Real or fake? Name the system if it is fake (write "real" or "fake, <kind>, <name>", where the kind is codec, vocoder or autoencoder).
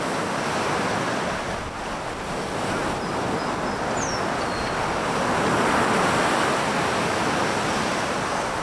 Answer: real